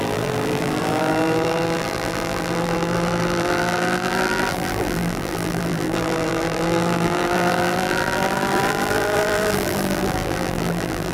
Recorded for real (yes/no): no